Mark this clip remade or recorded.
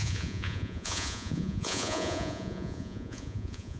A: remade